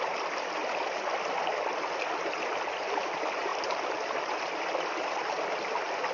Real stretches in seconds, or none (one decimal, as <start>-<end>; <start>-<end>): 0.0-1.7; 2.8-3.5; 5.4-6.1